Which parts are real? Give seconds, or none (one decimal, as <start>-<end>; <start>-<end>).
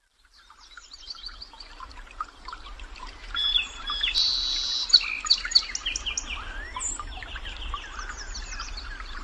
4.3-8.6